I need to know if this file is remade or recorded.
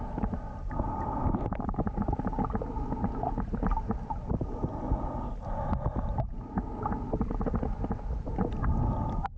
recorded